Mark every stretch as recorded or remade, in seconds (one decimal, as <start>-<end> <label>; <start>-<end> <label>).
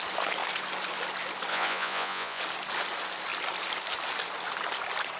0.0-1.5 recorded; 1.5-2.4 remade; 2.4-5.2 recorded